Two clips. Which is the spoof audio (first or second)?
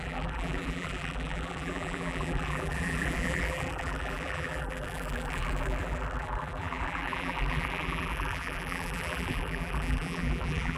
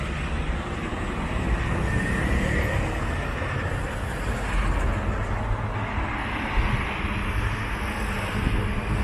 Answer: first